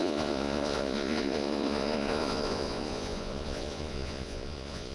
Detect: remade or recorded remade